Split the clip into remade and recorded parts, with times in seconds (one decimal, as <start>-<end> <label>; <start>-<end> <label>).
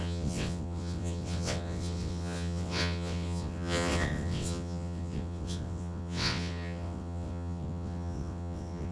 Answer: 0.0-8.9 remade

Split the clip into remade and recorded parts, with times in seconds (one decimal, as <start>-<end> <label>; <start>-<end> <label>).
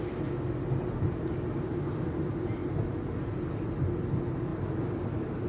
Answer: 0.0-5.5 recorded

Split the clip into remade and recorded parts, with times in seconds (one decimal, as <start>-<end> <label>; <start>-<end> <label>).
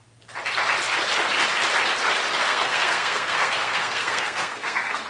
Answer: 0.0-2.4 recorded; 2.4-5.1 remade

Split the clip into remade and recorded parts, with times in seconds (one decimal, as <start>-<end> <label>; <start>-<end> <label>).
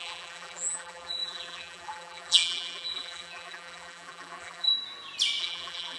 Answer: 0.0-4.7 remade; 4.7-5.4 recorded; 5.4-6.0 remade